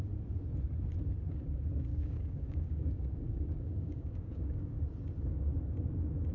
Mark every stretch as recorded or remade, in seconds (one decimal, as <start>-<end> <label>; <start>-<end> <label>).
0.0-1.9 recorded; 1.9-4.8 remade; 4.8-6.3 recorded